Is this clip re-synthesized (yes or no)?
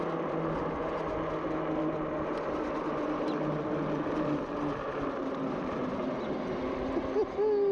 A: no